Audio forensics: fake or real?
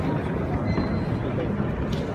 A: real